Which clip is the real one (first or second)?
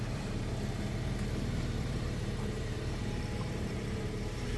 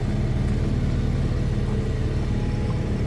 second